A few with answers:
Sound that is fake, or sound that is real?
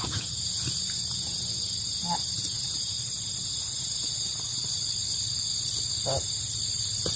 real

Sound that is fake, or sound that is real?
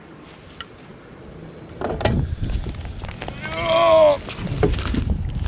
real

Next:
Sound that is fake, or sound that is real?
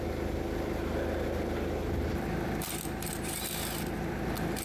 real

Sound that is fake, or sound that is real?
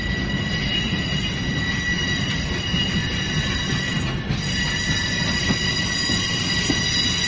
real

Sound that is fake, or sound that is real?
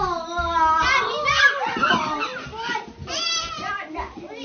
real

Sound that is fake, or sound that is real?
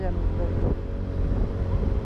real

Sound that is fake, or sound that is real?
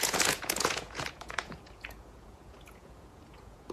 fake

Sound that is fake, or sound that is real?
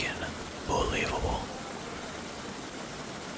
real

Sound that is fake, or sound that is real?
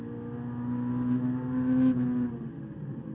real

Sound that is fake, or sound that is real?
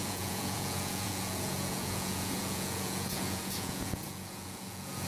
fake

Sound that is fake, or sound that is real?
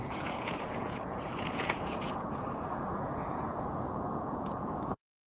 fake